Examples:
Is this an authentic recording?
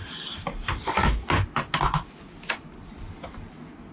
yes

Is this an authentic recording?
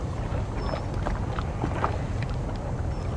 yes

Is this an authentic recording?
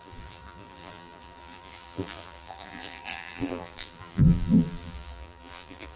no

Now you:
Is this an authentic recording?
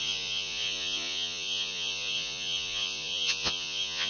no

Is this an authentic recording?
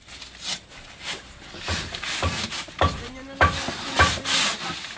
yes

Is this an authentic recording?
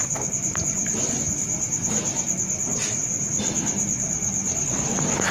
yes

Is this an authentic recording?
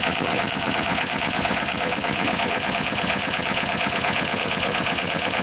no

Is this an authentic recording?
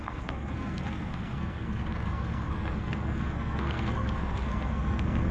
no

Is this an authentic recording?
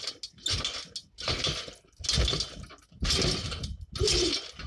yes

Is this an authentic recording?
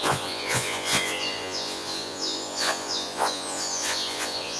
no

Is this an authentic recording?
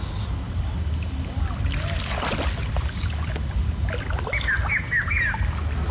yes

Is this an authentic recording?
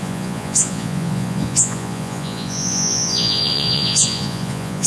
no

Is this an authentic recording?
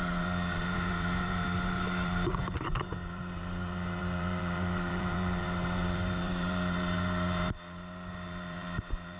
no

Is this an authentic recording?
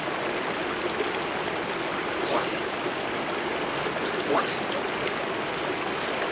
yes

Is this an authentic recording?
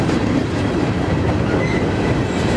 no